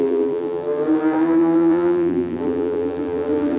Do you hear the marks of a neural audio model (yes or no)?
yes